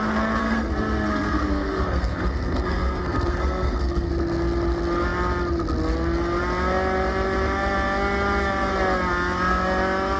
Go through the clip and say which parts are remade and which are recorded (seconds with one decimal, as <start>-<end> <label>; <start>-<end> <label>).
0.0-0.4 recorded; 0.4-4.1 remade; 4.1-10.2 recorded